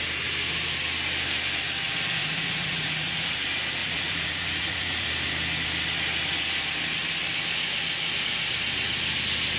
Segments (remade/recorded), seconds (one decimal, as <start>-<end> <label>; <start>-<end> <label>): 0.0-2.2 recorded; 2.2-3.4 remade; 3.4-3.8 recorded; 3.8-5.1 remade; 5.1-9.6 recorded